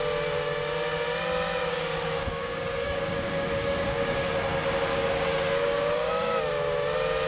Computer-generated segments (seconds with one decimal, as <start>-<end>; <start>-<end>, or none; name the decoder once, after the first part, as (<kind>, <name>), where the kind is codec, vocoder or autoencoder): 1.7-4.3 (codec, DAC); 4.9-6.1